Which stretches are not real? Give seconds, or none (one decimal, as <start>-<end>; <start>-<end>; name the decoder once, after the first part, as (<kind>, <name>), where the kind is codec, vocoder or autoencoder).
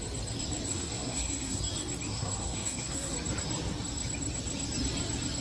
0.7-1.6 (codec, SNAC); 2.1-3.1